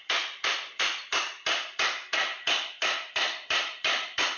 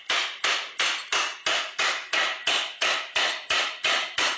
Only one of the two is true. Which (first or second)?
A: second